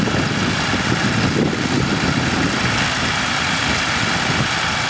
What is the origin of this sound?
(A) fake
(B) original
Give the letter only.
B